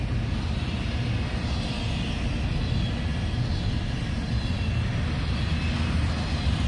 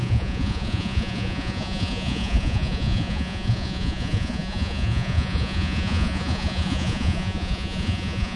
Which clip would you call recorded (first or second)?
first